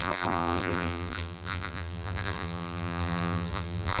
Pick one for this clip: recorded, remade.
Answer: remade